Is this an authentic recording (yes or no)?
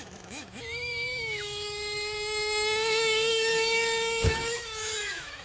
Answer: no